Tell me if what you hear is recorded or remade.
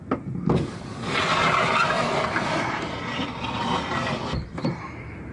recorded